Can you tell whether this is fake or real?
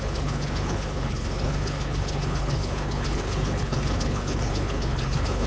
fake